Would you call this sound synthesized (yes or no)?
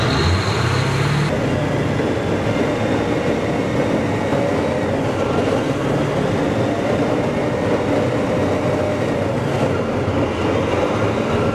no